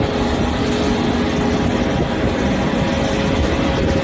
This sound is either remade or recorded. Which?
recorded